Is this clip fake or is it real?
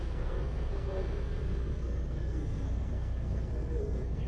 fake